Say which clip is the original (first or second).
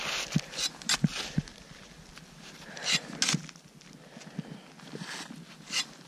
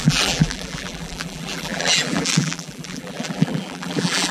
first